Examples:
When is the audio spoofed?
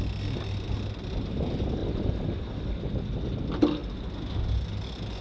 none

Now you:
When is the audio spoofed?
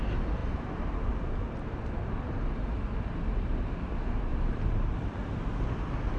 4.3-4.8 (vocoder, BigVGAN v2)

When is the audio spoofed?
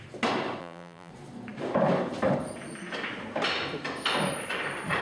0.6-1.1 (vocoder, BigVGAN v2)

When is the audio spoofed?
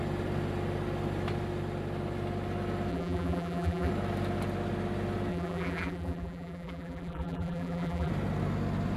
2.9-3.9 (vocoder, BigVGAN v2); 5.3-8.1